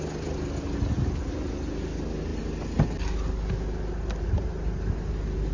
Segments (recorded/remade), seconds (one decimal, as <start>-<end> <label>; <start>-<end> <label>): 0.0-5.5 recorded